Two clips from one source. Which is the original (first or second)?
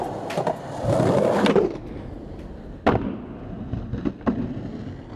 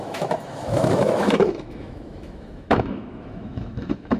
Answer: first